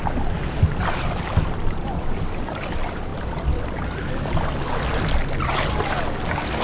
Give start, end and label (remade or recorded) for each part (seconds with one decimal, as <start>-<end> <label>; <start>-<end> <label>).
0.0-6.6 recorded

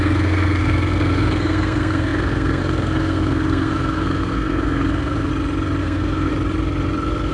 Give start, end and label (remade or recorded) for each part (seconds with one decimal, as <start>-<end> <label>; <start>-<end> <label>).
0.0-5.3 remade; 5.3-5.8 recorded; 5.8-6.3 remade; 6.3-7.3 recorded

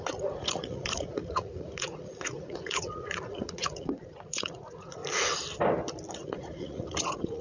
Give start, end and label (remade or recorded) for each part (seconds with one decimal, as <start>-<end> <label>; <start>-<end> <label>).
0.0-5.0 remade; 5.0-6.1 recorded; 6.1-7.4 remade

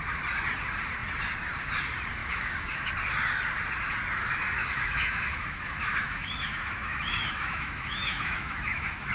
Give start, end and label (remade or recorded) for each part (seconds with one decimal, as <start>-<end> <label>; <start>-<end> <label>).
0.0-2.2 recorded; 2.2-2.9 remade; 2.9-4.6 recorded; 4.6-9.1 remade

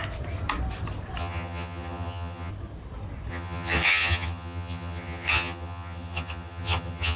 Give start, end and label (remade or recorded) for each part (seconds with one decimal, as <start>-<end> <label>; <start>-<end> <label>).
0.0-1.2 recorded; 1.2-2.5 remade; 2.5-3.3 recorded; 3.3-7.2 remade

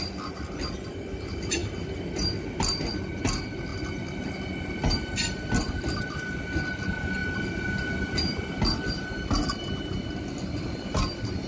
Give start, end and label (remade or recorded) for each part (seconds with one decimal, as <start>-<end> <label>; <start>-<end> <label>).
0.0-11.5 recorded

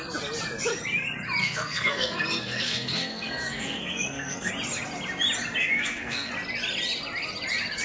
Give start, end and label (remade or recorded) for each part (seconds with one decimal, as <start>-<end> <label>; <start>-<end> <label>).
0.0-1.4 recorded; 1.4-4.5 remade; 4.5-5.6 recorded; 5.6-6.3 remade; 6.3-7.8 recorded